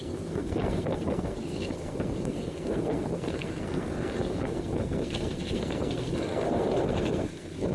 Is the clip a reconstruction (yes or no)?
yes